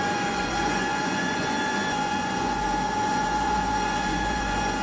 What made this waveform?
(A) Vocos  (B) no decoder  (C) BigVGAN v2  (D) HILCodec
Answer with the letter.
A